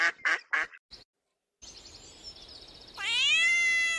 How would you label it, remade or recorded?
recorded